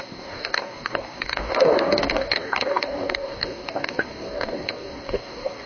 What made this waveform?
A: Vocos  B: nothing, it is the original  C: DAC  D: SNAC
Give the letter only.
C